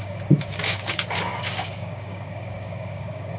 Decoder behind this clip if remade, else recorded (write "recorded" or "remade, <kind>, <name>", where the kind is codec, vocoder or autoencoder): remade, codec, DAC